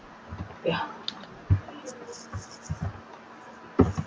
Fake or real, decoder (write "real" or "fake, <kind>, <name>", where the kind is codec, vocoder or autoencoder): real